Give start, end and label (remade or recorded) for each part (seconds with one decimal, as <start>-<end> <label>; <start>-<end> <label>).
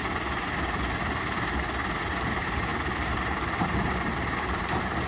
0.0-2.2 recorded; 2.2-5.1 remade